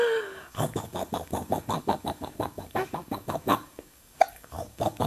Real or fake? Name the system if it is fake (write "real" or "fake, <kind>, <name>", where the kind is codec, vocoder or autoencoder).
fake, codec, DAC